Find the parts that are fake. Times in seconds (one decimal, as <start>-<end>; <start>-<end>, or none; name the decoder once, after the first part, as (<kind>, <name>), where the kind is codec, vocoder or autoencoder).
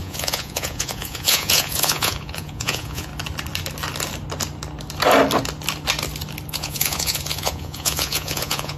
0.0-3.1 (vocoder, Vocos); 6.5-8.8